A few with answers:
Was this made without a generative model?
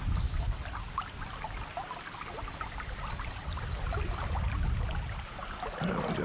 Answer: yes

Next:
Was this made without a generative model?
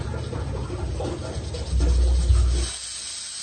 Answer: yes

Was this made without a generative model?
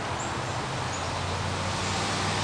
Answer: yes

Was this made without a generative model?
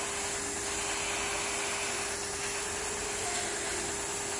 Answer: yes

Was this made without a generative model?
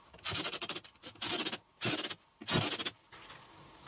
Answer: yes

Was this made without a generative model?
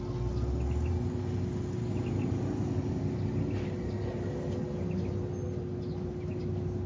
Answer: yes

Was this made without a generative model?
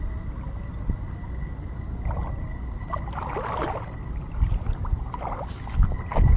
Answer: yes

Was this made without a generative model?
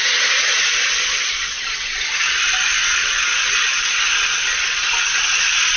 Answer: yes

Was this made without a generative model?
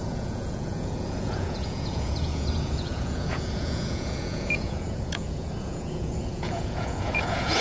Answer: no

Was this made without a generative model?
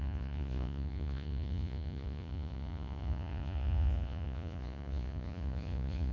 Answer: no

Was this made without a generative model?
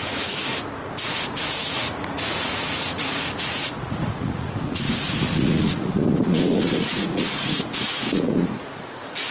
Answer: no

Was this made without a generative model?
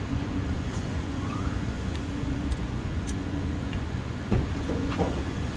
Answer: no